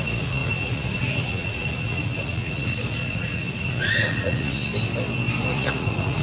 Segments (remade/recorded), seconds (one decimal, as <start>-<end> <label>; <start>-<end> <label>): 0.0-4.7 remade; 4.7-5.5 recorded; 5.5-6.2 remade